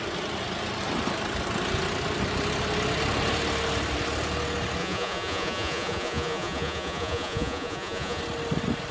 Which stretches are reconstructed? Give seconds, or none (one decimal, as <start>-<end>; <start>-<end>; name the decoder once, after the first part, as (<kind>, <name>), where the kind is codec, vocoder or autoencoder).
4.8-8.2 (vocoder, Vocos)